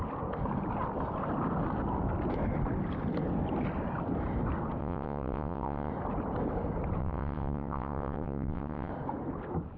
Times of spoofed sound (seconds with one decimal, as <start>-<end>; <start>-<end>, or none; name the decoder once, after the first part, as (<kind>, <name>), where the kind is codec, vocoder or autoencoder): 4.8-5.9 (vocoder, WaveNeXt); 7.0-8.9